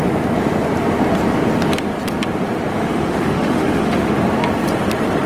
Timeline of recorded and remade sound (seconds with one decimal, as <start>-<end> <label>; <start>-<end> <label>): 0.0-2.7 recorded; 2.7-4.1 remade; 4.1-5.3 recorded